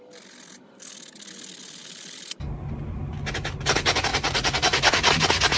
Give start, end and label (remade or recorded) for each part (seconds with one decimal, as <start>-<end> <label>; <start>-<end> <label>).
0.0-4.1 recorded; 4.1-5.1 remade; 5.1-5.6 recorded